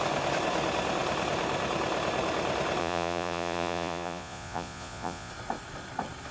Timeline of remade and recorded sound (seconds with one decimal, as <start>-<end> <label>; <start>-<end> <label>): 0.0-2.8 recorded; 2.8-5.3 remade; 5.3-6.3 recorded